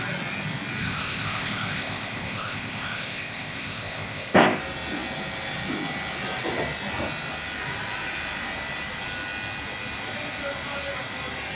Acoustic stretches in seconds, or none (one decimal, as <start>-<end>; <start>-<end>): 0.0-0.8; 4.6-11.6